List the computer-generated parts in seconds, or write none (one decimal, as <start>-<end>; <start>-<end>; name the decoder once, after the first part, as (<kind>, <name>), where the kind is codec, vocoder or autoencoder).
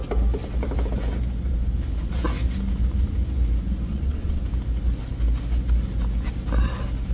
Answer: 3.9-4.4 (vocoder, WaveNeXt)